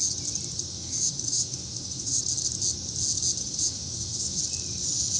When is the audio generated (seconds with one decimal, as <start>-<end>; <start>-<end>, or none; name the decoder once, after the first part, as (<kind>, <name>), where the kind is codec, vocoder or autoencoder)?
0.7-2.2 (autoencoder, DAC-VAE); 3.4-4.4